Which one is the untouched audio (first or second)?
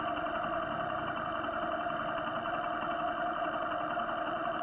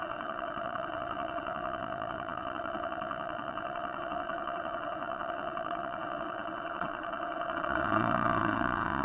first